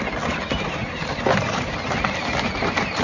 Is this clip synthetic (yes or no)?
no